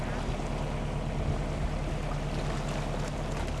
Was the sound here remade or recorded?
recorded